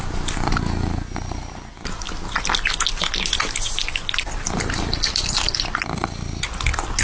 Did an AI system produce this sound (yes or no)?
no